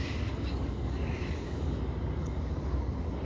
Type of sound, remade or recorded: remade